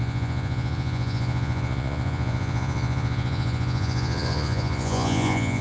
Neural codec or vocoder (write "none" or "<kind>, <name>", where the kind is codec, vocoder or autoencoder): vocoder, Vocos